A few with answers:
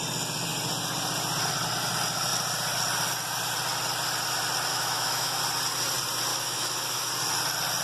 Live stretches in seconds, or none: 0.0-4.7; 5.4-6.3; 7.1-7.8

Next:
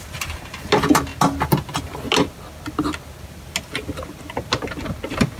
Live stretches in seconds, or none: 0.0-5.4

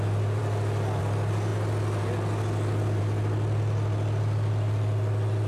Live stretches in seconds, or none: 0.0-5.5